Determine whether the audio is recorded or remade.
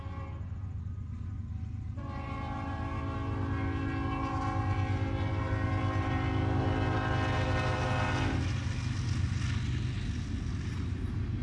recorded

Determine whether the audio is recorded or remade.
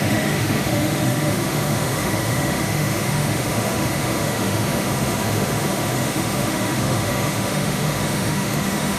remade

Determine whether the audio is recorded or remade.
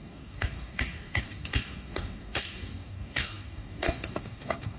remade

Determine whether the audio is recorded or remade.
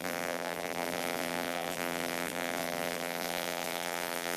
remade